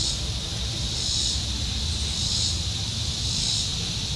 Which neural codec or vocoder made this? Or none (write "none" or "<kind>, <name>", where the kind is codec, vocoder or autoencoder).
none